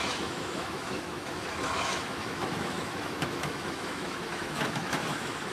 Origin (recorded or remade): remade